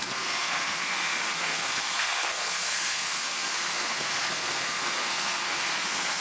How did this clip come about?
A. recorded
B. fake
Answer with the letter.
B